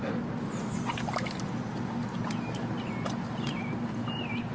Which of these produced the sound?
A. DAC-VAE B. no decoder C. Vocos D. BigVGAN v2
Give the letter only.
B